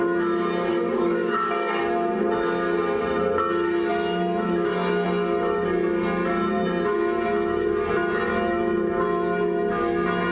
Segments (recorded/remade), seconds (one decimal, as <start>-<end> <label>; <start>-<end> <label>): 0.0-0.7 recorded; 0.7-1.8 remade; 1.8-10.3 recorded